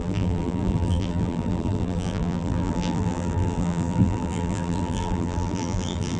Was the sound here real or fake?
fake